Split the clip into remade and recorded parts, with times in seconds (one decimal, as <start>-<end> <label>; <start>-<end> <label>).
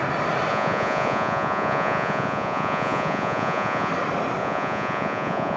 0.0-0.5 recorded; 0.5-3.9 remade; 3.9-4.4 recorded; 4.4-5.6 remade